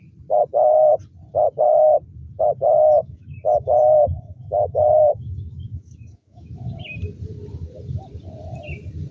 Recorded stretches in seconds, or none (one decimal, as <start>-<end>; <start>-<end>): 0.0-3.0; 6.5-9.1